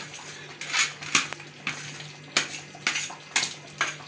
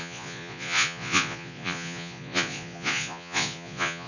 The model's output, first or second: second